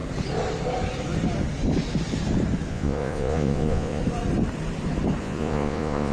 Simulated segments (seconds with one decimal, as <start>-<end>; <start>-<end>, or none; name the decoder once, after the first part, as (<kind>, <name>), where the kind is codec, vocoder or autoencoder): 2.7-4.0 (vocoder, Vocos); 5.2-6.1